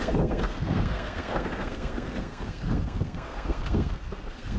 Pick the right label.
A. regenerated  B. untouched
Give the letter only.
A